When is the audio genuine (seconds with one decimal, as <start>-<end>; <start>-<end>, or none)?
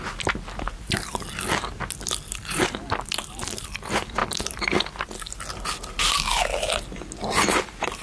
0.0-8.0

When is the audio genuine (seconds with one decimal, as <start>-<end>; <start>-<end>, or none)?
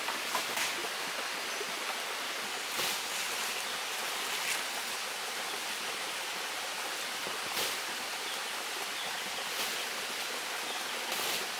0.0-11.6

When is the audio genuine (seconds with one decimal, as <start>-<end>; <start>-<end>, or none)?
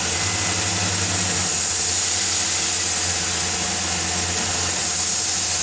0.0-5.6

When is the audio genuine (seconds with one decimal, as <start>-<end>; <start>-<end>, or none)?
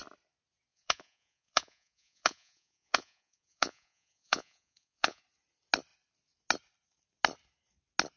0.0-0.7; 5.2-8.2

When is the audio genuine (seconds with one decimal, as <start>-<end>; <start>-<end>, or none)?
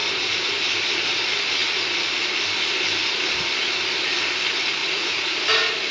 0.5-4.8; 5.4-5.9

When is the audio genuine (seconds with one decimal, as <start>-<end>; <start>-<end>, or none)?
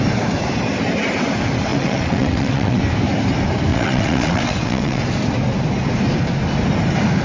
0.0-1.7; 2.8-3.7; 5.0-7.2